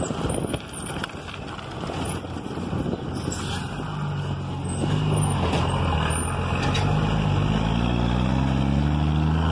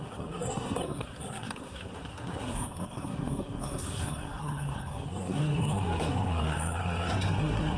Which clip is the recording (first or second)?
first